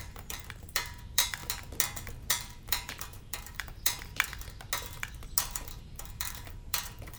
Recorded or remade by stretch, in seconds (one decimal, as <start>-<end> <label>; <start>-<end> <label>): 0.0-1.4 remade; 1.4-2.3 recorded; 2.3-4.1 remade; 4.1-5.4 recorded; 5.4-7.2 remade